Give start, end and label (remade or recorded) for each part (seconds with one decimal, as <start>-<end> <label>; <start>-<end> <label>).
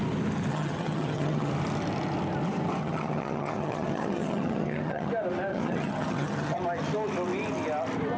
0.0-0.5 recorded; 0.5-1.5 remade; 1.5-2.8 recorded; 2.8-5.1 remade; 5.1-5.5 recorded; 5.5-6.6 remade; 6.6-8.2 recorded